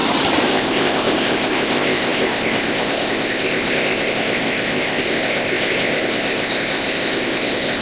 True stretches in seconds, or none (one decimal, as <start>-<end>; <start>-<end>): 0.0-0.5